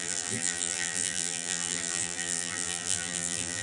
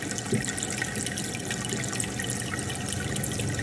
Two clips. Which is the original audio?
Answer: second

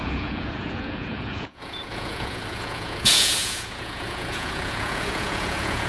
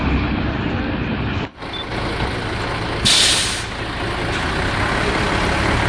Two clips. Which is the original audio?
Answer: second